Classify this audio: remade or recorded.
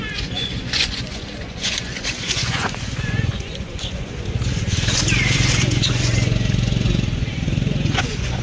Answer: remade